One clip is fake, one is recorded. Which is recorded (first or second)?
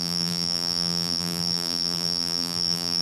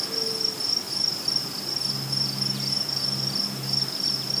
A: second